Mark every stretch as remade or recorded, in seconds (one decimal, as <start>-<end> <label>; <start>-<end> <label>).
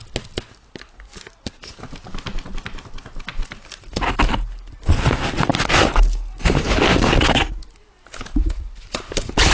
0.0-6.9 recorded; 6.9-7.4 remade; 7.4-9.5 recorded